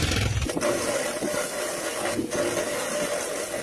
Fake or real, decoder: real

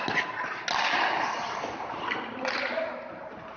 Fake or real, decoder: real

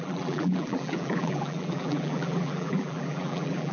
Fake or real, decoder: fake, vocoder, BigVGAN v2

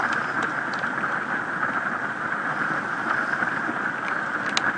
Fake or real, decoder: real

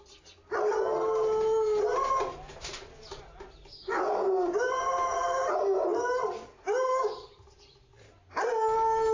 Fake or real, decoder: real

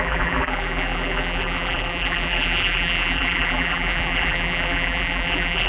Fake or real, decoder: fake, vocoder, BigVGAN v2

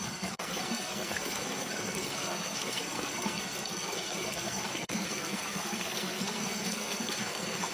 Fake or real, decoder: fake, codec, SNAC